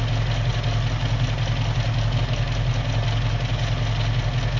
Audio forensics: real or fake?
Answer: real